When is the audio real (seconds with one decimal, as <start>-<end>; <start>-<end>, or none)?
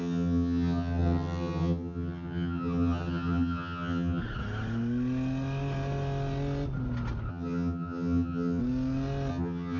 4.2-7.3; 8.6-9.3